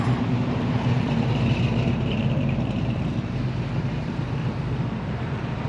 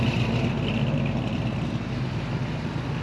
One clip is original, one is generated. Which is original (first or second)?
second